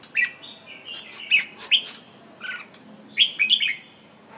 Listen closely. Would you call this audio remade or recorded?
recorded